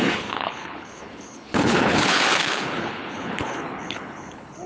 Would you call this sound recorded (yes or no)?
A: no